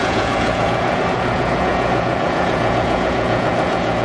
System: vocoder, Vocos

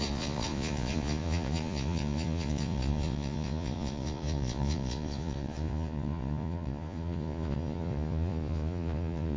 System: vocoder, Vocos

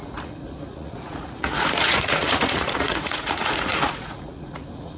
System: vocoder, Vocos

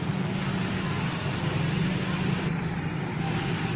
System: none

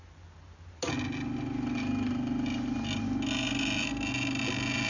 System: none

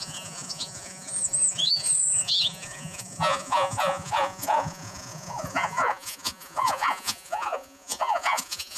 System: vocoder, Vocos